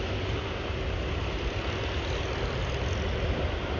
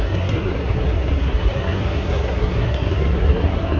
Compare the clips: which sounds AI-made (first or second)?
second